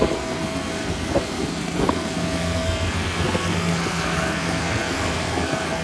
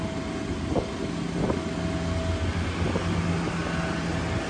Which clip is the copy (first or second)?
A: first